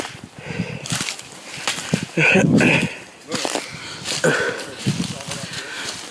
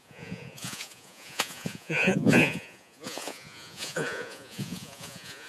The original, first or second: first